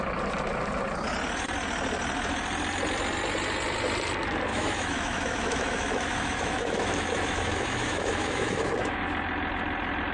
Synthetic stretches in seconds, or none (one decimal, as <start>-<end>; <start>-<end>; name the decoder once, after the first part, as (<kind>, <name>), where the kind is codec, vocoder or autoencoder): 4.5-9.0 (autoencoder, DAC-VAE)

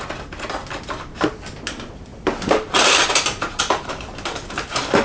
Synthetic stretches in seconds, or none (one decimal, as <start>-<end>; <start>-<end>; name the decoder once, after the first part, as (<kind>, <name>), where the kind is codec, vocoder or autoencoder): 2.1-3.9 (vocoder, BigVGAN v2)

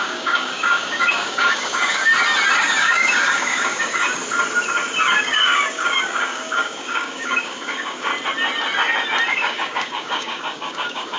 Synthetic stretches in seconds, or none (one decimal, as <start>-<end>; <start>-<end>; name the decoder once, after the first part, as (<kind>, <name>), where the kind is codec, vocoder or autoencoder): 0.0-2.1 (codec, DAC); 2.6-4.2; 5.1-8.1; 9.3-11.2

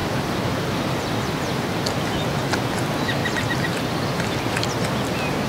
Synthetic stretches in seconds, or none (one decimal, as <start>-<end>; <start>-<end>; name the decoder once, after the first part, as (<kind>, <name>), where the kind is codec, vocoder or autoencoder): 0.0-1.7 (vocoder, BigVGAN v2)

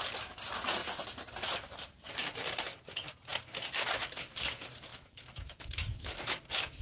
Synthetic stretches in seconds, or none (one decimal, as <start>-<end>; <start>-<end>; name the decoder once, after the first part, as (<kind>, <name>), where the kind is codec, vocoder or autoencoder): 4.9-6.1 (autoencoder, DAC-VAE)

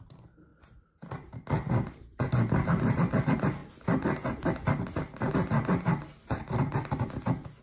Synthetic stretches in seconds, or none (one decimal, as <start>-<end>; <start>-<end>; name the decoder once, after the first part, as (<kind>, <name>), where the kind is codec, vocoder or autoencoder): none